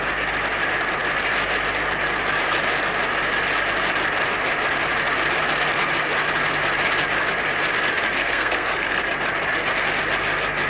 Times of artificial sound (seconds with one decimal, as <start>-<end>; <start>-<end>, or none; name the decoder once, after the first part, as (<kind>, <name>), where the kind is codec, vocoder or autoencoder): 8.2-9.0 (codec, SNAC)